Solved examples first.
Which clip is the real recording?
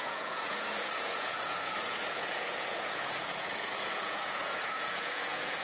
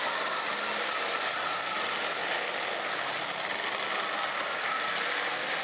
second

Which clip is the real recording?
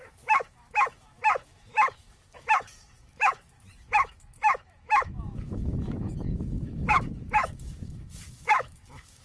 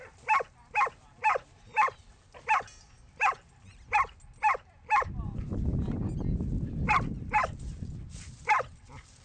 second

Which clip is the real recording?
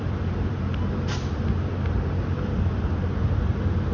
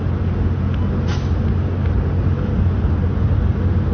second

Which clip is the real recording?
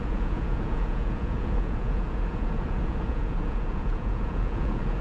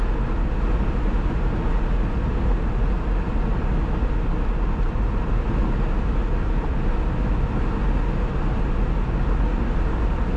second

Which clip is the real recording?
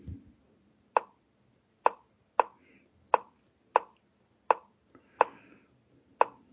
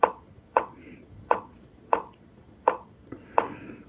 first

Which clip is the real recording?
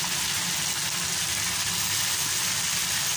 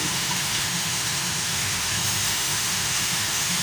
first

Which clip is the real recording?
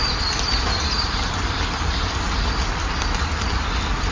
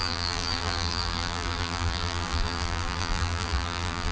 first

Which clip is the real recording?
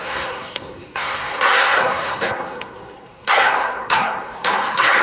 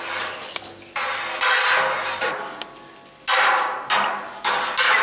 second